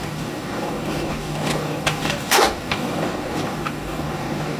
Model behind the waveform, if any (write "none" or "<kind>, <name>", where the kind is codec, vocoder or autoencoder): codec, DAC